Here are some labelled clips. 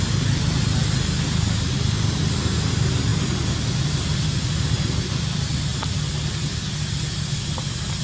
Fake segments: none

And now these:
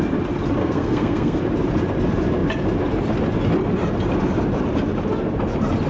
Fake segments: 0.6-1.4 (codec, SNAC)

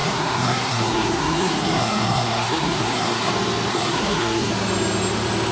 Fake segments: 0.0-3.3 (codec, SNAC); 3.7-4.5

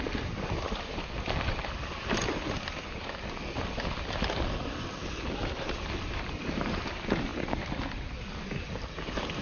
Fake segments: none

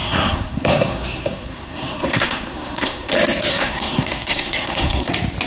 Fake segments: 0.0-3.1 (codec, SNAC); 3.5-5.1